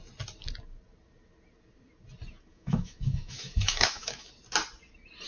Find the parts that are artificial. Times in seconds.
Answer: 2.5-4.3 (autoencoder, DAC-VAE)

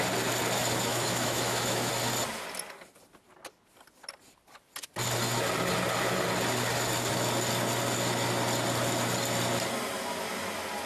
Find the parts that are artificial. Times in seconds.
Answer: 0.9-1.9 (autoencoder, DAC-VAE)